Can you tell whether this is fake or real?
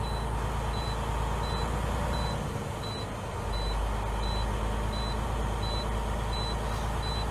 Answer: real